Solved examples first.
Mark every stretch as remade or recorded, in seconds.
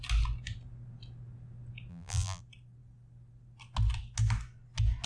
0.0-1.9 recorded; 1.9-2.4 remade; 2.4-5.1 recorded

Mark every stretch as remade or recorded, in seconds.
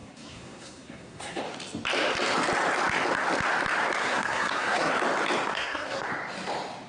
0.0-1.4 remade; 1.4-4.0 recorded; 4.0-4.9 remade; 4.9-5.5 recorded; 5.5-6.1 remade; 6.1-6.9 recorded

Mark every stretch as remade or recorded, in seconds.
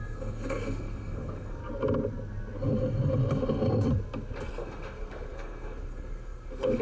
0.0-1.6 remade; 1.6-4.5 recorded; 4.5-6.8 remade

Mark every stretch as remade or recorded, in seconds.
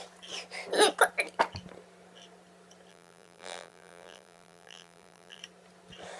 0.0-2.9 recorded; 2.9-5.4 remade; 5.4-6.2 recorded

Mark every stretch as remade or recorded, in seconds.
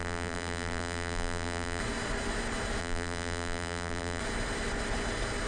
0.0-1.8 remade; 1.8-2.8 recorded; 2.8-4.2 remade; 4.2-5.5 recorded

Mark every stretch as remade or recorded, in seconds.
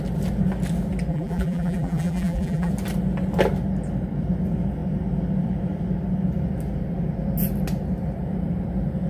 0.0-1.1 recorded; 1.1-2.7 remade; 2.7-9.1 recorded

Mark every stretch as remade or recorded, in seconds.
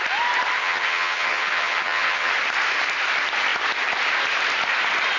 0.0-0.6 recorded; 0.6-2.3 remade; 2.3-5.2 recorded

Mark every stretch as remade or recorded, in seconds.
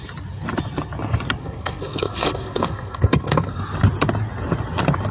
0.0-1.4 recorded; 1.4-3.6 remade; 3.6-5.1 recorded